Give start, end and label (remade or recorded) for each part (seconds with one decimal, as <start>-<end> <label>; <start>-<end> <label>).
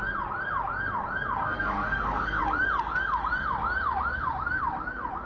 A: 0.0-1.4 recorded; 1.4-2.4 remade; 2.4-5.3 recorded